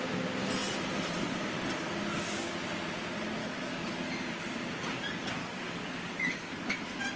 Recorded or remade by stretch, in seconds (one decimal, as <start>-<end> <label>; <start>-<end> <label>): 0.0-3.4 recorded; 3.4-4.0 remade; 4.0-5.4 recorded; 5.4-6.8 remade; 6.8-7.2 recorded